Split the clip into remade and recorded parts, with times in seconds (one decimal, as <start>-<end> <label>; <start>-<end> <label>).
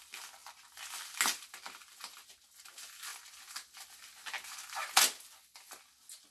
0.0-6.3 recorded